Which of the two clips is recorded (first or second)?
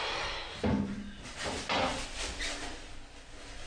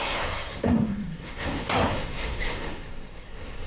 first